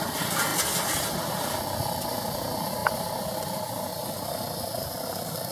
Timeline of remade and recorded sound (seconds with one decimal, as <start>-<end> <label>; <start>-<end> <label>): 0.0-0.5 remade; 0.5-1.1 recorded; 1.1-5.5 remade